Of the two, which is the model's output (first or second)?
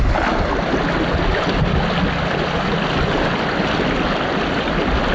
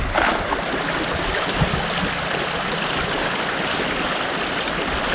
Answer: second